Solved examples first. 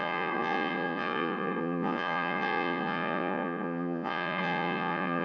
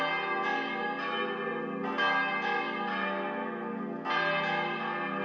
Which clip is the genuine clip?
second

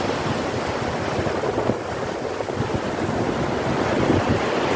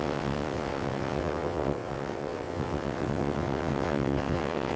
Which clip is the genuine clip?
first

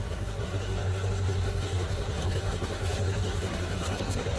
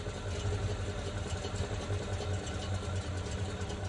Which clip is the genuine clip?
second